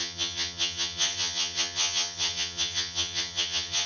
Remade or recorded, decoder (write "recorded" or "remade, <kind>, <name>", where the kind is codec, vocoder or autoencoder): remade, vocoder, HiFi-GAN